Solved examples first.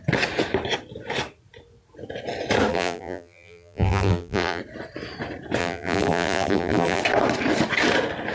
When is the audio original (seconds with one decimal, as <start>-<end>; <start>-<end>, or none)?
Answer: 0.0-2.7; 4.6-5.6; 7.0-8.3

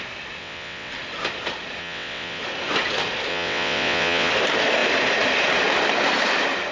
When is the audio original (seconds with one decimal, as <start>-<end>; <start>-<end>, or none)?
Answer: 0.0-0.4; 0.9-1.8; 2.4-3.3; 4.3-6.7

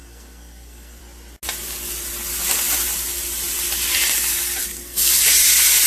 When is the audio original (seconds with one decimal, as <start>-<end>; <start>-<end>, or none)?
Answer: 1.0-4.6; 5.2-5.9

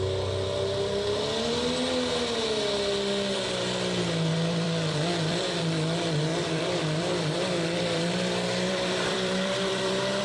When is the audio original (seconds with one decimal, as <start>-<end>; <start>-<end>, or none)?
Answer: 0.0-4.3; 5.6-6.3